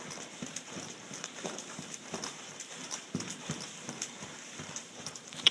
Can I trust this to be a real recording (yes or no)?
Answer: no